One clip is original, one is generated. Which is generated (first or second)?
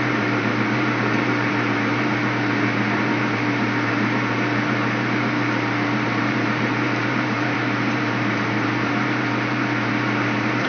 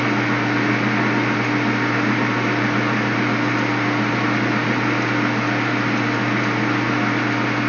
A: first